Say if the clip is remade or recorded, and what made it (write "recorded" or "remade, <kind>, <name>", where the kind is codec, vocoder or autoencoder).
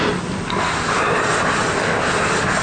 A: recorded